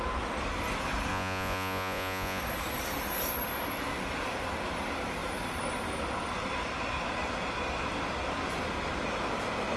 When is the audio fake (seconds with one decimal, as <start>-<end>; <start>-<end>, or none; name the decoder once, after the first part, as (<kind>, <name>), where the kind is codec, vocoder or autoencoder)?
1.1-2.4 (vocoder, Vocos)

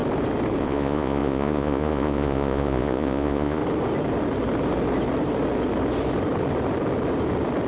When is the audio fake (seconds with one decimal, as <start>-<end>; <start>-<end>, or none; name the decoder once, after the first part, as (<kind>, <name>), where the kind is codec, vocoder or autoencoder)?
0.6-3.6 (vocoder, Vocos)

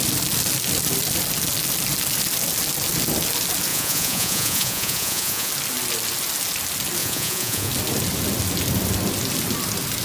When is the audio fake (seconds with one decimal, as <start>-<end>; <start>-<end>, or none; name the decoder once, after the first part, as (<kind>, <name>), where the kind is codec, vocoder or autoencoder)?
3.7-5.5 (vocoder, Vocos); 7.0-7.7

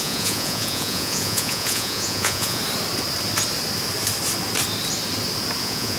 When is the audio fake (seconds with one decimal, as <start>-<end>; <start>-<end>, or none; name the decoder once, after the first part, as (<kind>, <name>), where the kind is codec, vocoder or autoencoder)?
0.0-2.6 (vocoder, Vocos); 5.6-6.0

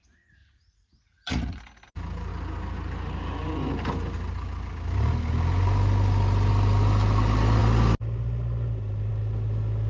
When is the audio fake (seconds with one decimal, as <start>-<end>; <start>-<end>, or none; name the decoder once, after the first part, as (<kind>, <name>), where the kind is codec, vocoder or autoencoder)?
0.4-1.6 (vocoder, Vocos)

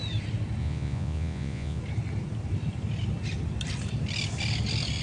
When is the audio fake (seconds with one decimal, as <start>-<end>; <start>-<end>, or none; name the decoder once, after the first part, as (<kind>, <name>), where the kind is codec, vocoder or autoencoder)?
0.6-1.8 (vocoder, Vocos)

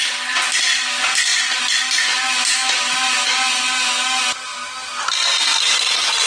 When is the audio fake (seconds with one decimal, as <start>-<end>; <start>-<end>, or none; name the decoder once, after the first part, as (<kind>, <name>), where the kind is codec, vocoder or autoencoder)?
none